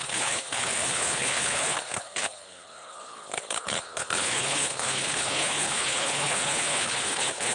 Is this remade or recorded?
remade